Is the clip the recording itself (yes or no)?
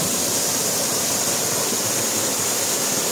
yes